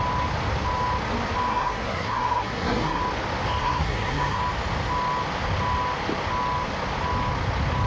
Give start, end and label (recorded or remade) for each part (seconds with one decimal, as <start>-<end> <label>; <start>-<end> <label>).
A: 0.0-1.5 recorded; 1.5-3.0 remade; 3.0-3.6 recorded; 3.6-4.4 remade; 4.4-7.9 recorded